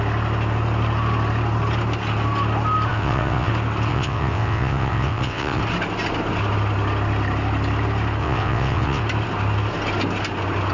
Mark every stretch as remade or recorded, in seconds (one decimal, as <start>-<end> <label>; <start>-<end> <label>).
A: 0.0-2.9 recorded; 2.9-3.5 remade; 3.5-3.9 recorded; 3.9-5.6 remade; 5.6-8.2 recorded; 8.2-9.0 remade; 9.0-10.7 recorded